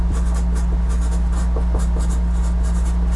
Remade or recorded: recorded